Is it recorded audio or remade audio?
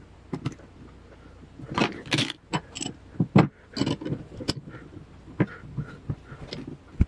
recorded